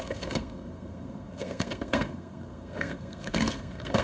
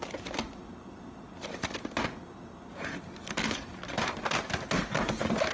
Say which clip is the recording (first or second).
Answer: second